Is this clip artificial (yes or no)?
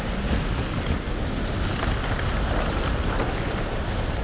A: no